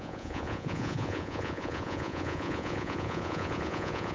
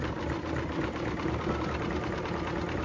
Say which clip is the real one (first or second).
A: second